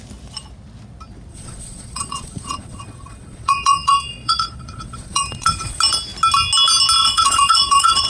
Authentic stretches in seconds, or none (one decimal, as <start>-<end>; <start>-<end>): 0.0-1.3; 5.8-7.0